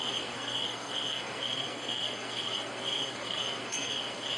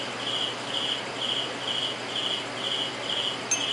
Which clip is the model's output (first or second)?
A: first